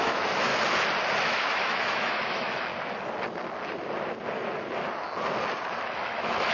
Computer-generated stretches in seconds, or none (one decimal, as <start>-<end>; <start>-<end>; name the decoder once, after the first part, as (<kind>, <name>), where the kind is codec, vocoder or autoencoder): 0.0-0.5 (autoencoder, DAC-VAE); 1.2-2.7; 5.8-6.5